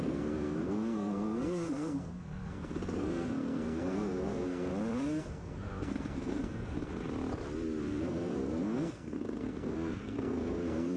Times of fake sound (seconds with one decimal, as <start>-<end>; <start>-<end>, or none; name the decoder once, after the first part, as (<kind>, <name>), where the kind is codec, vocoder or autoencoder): 0.0-4.7 (codec, SNAC); 5.2-6.9; 8.0-11.0